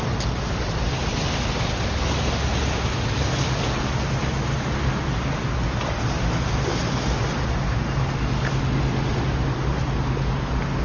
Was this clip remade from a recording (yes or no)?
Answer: no